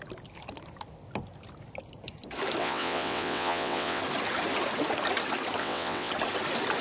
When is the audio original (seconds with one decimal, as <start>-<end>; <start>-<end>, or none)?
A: 0.0-2.6; 4.0-5.6; 6.1-6.8